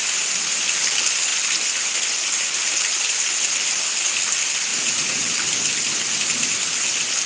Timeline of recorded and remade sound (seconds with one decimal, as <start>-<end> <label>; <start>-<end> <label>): 0.0-4.7 recorded; 4.7-5.2 remade; 5.2-7.3 recorded